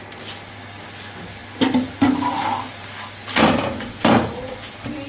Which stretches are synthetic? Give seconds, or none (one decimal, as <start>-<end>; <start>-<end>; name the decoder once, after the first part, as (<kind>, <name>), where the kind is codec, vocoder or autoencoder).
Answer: none